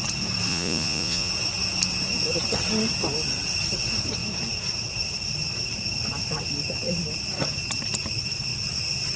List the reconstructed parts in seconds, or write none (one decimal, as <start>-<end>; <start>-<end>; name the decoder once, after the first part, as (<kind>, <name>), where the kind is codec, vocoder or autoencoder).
0.5-1.3 (vocoder, Vocos)